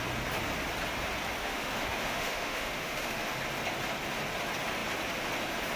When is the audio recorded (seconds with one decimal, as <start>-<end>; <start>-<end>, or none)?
0.0-1.4; 3.4-5.8